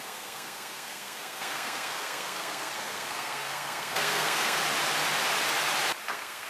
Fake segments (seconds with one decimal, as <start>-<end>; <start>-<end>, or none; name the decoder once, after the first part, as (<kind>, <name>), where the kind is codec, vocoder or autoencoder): 0.0-4.6 (codec, SNAC); 6.1-6.5